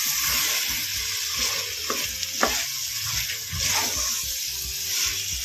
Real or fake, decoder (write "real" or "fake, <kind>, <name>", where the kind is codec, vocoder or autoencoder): real